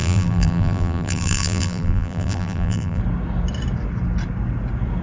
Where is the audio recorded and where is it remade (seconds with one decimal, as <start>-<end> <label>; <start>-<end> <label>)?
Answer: 0.0-3.0 remade; 3.0-5.0 recorded